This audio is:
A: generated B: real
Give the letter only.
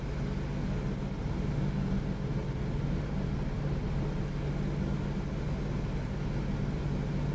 B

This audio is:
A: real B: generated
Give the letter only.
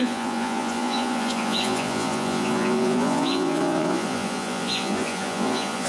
B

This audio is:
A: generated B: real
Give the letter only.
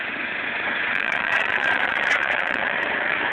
A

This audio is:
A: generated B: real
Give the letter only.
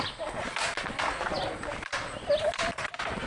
B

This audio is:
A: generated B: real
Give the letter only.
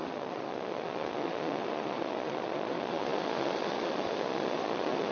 A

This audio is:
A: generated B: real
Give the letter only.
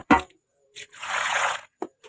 A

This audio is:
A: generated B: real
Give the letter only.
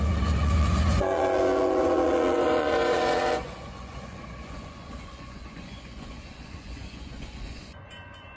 A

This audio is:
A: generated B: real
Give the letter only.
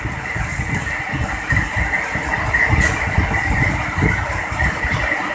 B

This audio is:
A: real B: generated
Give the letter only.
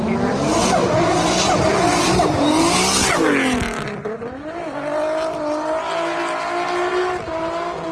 A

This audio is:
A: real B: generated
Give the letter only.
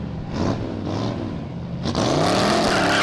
A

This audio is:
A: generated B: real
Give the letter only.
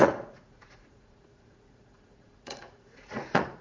A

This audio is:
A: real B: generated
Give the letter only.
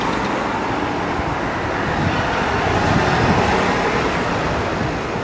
A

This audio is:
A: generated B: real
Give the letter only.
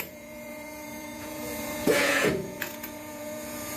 A